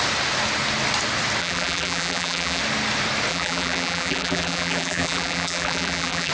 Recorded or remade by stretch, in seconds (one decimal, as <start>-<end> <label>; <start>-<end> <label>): 0.0-1.4 recorded; 1.4-2.6 remade; 2.6-3.3 recorded; 3.3-6.3 remade

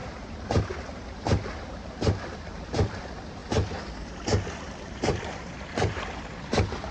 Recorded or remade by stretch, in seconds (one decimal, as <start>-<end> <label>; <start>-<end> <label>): 0.0-2.2 recorded; 2.2-6.9 remade

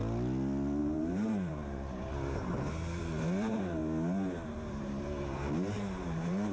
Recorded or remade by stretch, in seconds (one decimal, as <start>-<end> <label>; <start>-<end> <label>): 0.0-0.8 recorded; 0.8-3.8 remade; 3.8-4.5 recorded; 4.5-6.5 remade

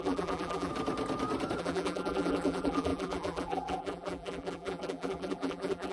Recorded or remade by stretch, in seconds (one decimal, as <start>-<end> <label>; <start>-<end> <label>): 0.0-0.7 remade; 0.7-1.6 recorded; 1.6-5.9 remade

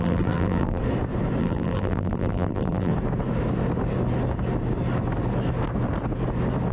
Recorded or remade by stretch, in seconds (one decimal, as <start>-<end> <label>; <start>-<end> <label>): 0.0-0.8 remade; 0.8-1.4 recorded; 1.4-2.9 remade; 2.9-6.7 recorded

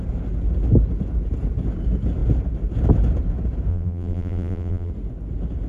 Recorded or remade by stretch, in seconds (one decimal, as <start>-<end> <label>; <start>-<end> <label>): 0.0-3.7 recorded; 3.7-4.9 remade; 4.9-5.7 recorded